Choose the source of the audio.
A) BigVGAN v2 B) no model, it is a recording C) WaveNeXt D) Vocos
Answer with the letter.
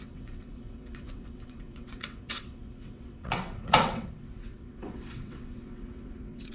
C